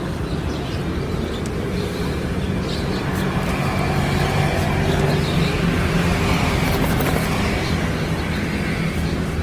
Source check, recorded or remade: recorded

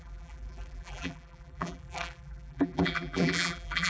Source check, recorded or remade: remade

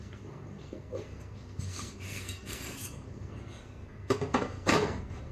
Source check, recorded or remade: remade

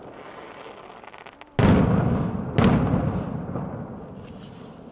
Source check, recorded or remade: recorded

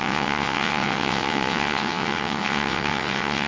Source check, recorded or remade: remade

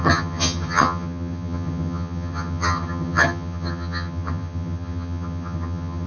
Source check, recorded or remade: remade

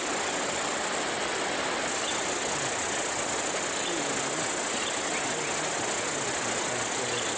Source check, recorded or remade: recorded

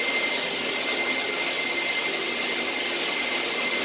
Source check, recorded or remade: recorded